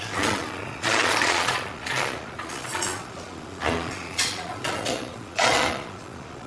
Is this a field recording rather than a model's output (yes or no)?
no